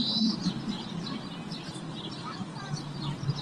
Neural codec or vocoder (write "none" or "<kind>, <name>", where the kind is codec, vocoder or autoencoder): none